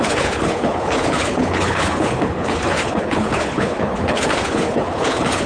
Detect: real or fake fake